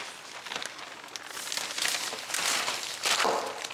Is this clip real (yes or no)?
yes